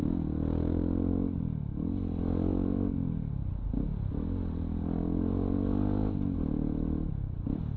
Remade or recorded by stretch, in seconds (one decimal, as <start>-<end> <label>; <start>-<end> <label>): 0.0-7.8 recorded